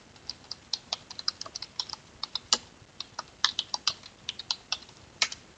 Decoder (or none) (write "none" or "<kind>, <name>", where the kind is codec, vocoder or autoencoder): vocoder, BigVGAN v2